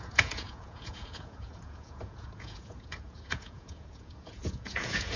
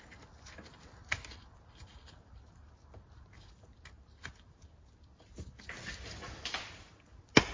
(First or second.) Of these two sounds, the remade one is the first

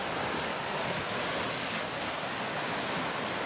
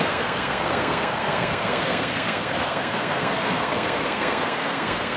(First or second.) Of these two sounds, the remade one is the second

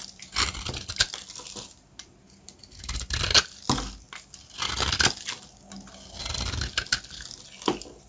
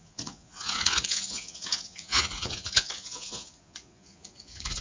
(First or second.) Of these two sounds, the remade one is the second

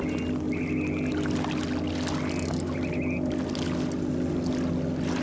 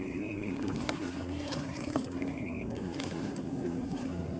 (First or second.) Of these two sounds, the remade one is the second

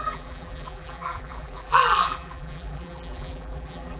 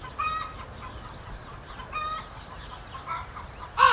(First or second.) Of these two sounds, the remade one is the first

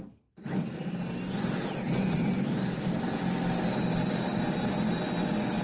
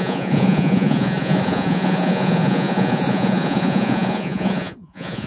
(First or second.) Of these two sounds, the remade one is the second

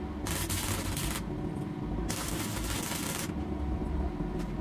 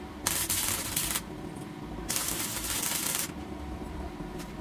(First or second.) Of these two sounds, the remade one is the second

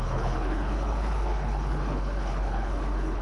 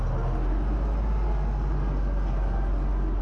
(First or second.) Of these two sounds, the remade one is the first